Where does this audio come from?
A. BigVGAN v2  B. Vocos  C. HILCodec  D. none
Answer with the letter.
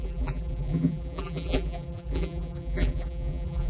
A